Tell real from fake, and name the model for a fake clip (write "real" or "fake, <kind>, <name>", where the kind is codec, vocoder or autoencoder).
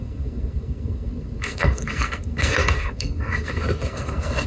fake, codec, SNAC